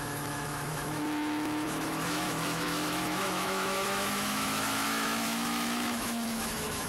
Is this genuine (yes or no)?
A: no